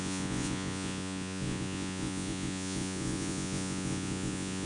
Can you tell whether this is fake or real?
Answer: fake